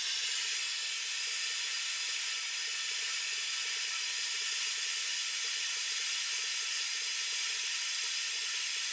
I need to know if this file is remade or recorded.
recorded